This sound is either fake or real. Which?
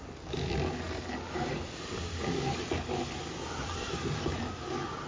real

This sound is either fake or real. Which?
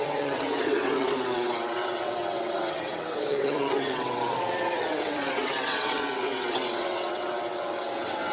fake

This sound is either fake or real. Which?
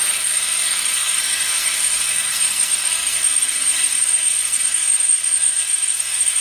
fake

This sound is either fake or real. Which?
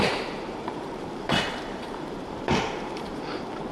fake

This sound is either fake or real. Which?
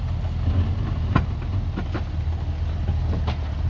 real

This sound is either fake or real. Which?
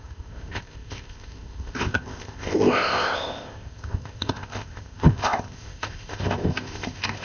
fake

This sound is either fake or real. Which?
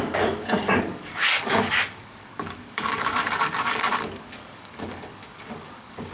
fake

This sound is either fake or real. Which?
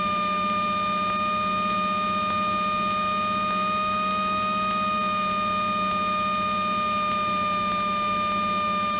real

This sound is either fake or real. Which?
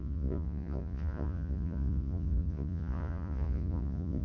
fake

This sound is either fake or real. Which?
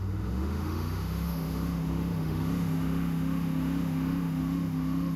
fake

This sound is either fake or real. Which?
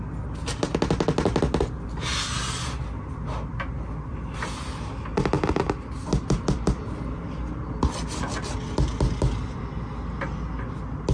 real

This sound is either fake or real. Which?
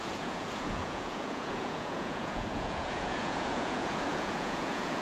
fake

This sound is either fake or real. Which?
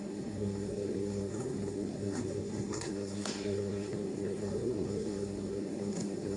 fake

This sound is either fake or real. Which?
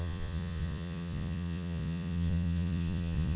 fake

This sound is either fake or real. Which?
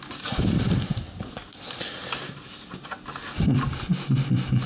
real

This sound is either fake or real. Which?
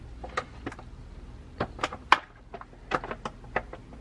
real